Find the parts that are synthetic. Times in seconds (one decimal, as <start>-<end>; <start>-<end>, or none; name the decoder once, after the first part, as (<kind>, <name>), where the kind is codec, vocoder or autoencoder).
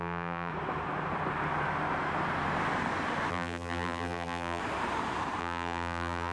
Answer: 0.0-0.5 (vocoder, BigVGAN v2); 3.3-4.6; 5.4-6.3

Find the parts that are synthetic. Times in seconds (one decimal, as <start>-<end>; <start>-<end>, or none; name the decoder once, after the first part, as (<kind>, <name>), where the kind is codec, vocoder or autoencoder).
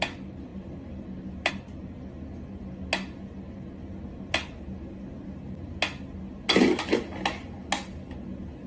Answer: none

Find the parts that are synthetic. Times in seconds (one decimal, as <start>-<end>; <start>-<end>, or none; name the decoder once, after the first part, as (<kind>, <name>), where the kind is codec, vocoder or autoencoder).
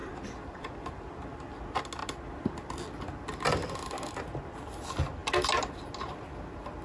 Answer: 0.0-1.0 (vocoder, BigVGAN v2)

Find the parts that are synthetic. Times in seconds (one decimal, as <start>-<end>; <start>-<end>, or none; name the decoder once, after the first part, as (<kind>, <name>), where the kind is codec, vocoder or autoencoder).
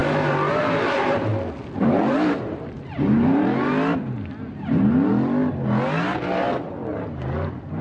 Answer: 0.6-1.3 (vocoder, BigVGAN v2); 1.8-3.7